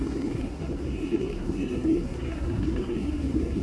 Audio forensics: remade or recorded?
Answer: remade